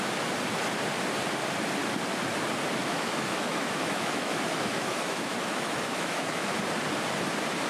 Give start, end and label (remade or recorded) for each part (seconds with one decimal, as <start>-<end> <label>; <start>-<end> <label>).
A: 0.0-2.8 recorded; 2.8-6.6 remade; 6.6-7.7 recorded